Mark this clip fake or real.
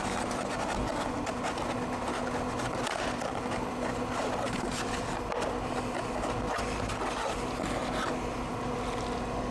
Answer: real